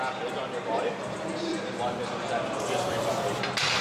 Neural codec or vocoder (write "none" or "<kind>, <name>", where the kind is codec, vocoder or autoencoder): none